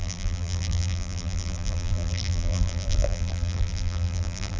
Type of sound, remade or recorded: remade